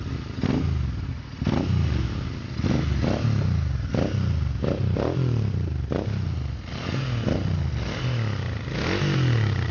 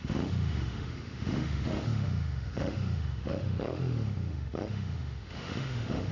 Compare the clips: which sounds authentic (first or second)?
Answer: first